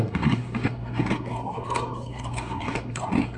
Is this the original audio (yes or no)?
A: no